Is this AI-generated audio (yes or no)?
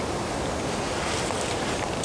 no